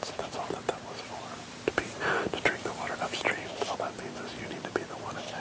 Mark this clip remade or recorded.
recorded